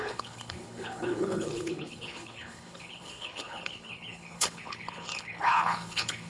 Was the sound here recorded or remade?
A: remade